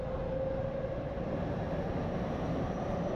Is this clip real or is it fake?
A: real